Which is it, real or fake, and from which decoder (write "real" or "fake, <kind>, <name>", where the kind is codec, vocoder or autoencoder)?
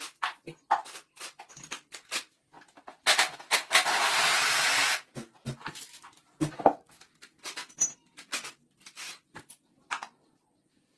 real